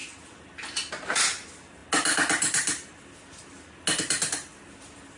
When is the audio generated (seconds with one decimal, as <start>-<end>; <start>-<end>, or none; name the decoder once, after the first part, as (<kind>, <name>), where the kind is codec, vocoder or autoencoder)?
none